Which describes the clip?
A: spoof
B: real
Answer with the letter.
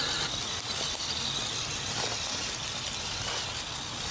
B